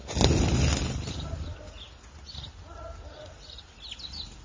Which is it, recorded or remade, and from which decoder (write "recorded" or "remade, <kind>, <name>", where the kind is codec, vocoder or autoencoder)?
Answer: recorded